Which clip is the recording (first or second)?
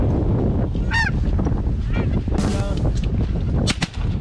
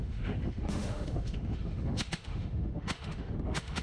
first